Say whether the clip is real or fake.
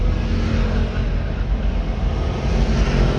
real